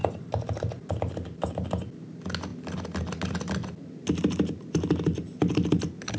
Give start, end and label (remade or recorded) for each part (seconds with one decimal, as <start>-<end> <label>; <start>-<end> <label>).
0.0-1.8 remade; 1.8-6.2 recorded